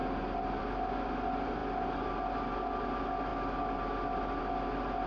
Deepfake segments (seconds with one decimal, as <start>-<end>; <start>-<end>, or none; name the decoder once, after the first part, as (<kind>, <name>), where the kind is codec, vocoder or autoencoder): none